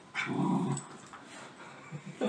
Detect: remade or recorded recorded